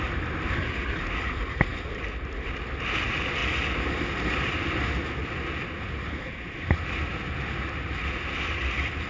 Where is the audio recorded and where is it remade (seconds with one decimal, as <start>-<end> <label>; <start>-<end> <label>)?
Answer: 0.0-9.1 recorded